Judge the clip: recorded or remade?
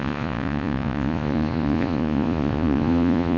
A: remade